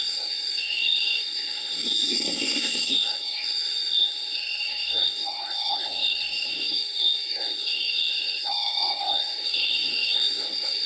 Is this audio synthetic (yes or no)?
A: yes